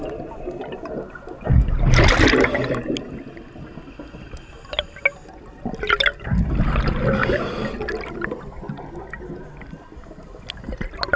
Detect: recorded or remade recorded